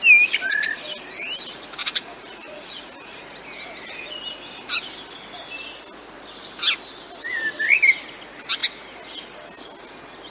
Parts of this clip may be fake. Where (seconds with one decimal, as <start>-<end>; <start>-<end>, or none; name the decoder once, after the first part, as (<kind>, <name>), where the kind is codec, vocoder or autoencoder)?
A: 1.8-3.2 (vocoder, Vocos)